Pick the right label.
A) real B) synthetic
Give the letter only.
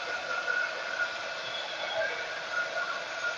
A